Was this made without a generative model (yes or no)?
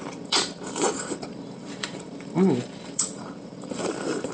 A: no